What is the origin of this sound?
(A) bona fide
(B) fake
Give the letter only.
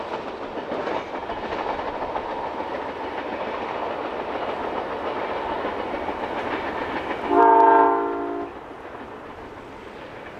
A